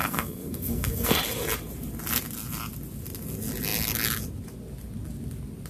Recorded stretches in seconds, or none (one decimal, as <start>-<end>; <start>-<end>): 1.2-5.7